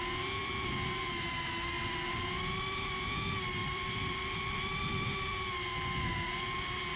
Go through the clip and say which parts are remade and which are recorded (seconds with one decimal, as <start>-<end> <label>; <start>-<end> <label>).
0.0-3.6 recorded; 3.6-4.7 remade; 4.7-7.0 recorded